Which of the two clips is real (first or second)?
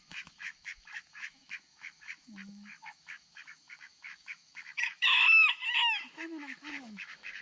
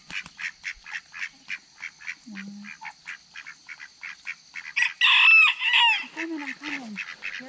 second